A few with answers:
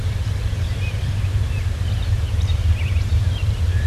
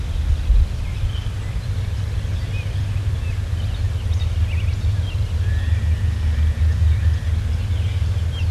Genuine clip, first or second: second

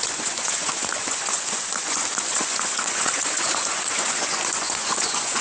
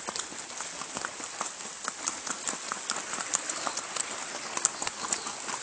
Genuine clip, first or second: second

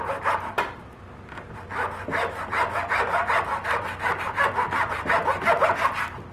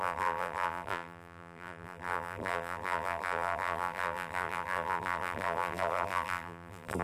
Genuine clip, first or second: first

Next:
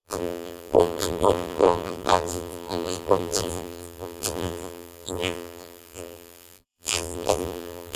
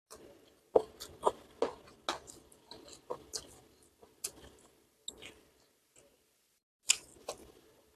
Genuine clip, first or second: second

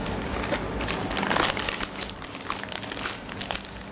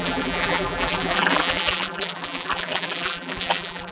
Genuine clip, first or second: first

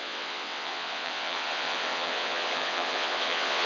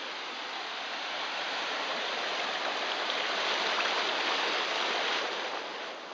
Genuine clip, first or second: second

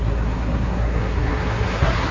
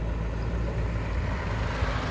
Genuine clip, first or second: second